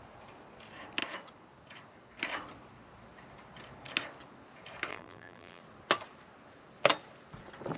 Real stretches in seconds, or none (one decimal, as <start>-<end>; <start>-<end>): 0.0-4.9; 5.6-7.8